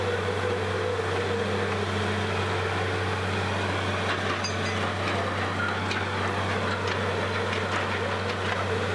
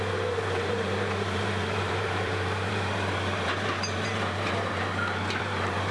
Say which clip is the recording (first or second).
first